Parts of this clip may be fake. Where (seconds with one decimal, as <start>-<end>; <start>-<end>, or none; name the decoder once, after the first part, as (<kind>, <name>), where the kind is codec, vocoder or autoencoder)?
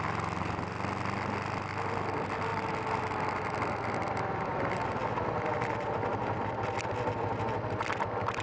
none